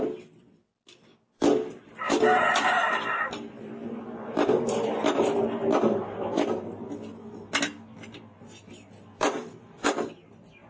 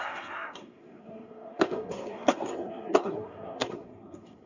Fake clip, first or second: second